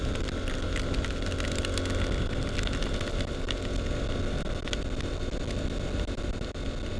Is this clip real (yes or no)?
yes